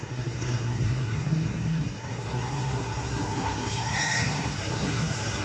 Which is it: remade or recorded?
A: remade